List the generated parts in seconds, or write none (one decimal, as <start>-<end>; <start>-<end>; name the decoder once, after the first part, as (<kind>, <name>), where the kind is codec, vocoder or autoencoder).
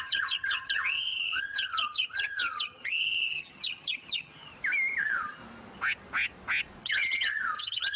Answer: 0.0-4.5 (vocoder, HiFi-GAN); 5.0-5.4; 6.8-8.0